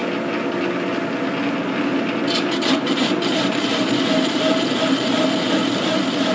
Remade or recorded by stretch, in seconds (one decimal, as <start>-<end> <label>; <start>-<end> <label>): 0.0-1.6 recorded; 1.6-6.3 remade